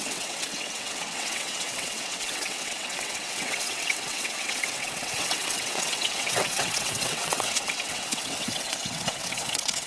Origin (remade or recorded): remade